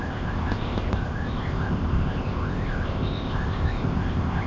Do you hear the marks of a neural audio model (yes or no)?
yes